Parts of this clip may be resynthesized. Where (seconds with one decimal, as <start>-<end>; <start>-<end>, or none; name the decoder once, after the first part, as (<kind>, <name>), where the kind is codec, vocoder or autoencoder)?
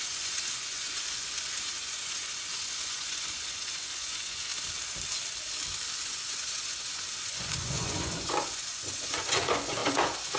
0.0-4.5 (vocoder, Vocos); 6.0-10.4